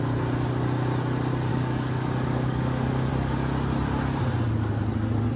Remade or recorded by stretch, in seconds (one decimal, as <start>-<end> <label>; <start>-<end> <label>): 0.0-1.5 recorded; 1.5-3.1 remade; 3.1-5.4 recorded